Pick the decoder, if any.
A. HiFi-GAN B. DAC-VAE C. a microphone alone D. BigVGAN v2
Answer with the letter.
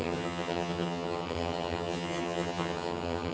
A